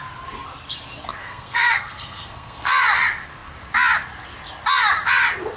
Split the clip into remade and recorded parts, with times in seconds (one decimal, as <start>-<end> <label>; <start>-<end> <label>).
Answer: 0.0-1.2 recorded; 1.2-2.7 remade; 2.7-5.6 recorded